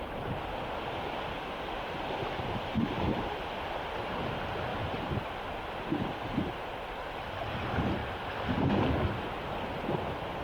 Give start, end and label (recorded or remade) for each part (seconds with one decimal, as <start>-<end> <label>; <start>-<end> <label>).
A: 0.0-10.4 remade